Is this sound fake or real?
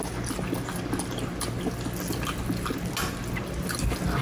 real